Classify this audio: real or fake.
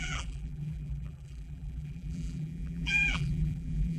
fake